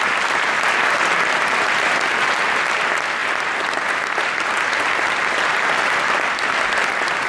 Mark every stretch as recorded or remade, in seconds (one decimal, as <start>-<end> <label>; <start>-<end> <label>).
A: 0.0-7.3 recorded